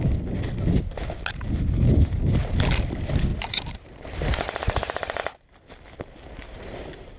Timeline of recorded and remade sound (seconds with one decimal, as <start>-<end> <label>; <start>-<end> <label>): 0.0-3.3 recorded; 3.3-5.2 remade; 5.2-7.2 recorded